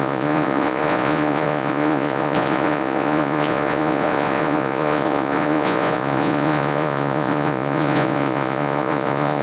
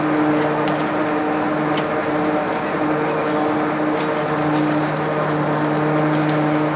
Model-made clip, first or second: first